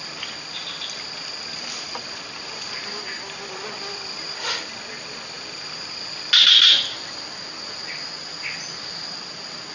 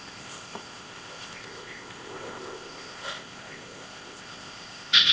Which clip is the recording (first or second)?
first